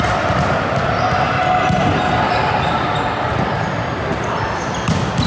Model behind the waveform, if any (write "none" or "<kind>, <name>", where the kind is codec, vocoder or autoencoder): none